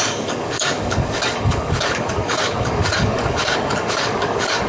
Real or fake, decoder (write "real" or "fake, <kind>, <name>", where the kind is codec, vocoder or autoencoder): fake, codec, DAC